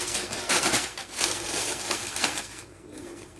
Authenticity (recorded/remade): remade